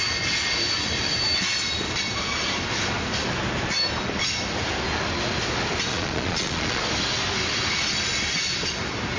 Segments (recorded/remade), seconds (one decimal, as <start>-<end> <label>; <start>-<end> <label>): 0.0-5.9 recorded; 5.9-6.8 remade; 6.8-9.2 recorded